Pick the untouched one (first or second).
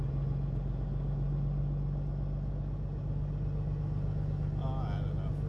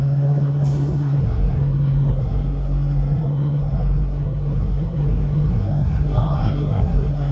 first